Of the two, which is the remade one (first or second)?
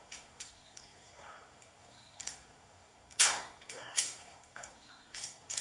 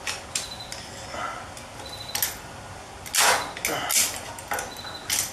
first